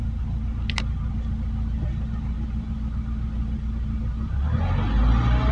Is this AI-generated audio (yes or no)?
no